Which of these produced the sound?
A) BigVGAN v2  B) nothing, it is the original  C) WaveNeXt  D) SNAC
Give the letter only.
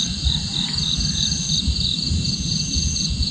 A